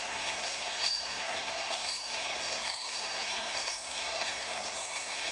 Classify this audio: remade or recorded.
remade